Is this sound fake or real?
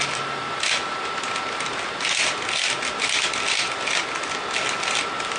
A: real